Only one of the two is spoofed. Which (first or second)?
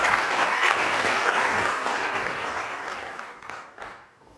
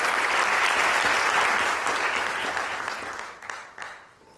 first